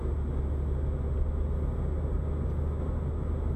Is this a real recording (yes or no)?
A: yes